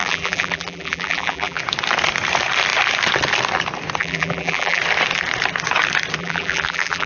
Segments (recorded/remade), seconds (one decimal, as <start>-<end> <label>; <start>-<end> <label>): 0.0-1.6 remade; 1.6-4.0 recorded; 4.0-4.8 remade; 4.8-6.2 recorded; 6.2-7.1 remade